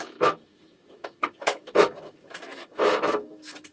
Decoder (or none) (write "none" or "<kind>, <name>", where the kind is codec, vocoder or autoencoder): autoencoder, DAC-VAE